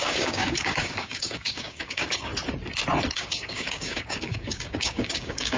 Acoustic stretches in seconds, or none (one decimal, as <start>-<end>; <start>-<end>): 2.3-3.1